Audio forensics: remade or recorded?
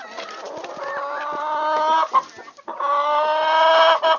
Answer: recorded